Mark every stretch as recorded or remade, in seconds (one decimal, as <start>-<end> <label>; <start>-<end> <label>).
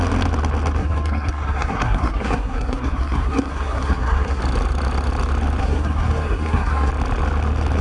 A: 0.0-0.8 recorded; 0.8-4.4 remade; 4.4-5.6 recorded; 5.6-6.9 remade; 6.9-7.8 recorded